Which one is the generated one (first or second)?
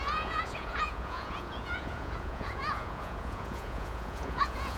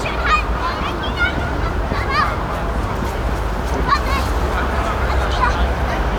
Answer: first